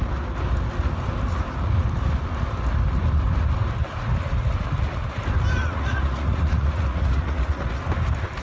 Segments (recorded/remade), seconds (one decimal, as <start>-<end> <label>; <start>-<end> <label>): 0.0-5.6 recorded; 5.6-7.9 remade; 7.9-8.4 recorded